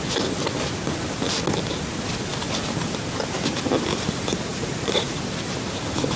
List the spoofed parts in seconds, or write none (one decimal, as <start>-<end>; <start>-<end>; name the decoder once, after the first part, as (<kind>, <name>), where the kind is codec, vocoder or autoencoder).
4.5-5.2 (vocoder, Vocos)